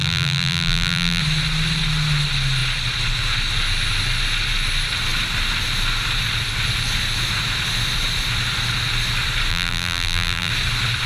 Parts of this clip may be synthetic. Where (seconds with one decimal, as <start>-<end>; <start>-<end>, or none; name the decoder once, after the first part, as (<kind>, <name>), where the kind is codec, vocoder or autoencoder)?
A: 0.0-1.2 (vocoder, BigVGAN v2); 9.5-10.5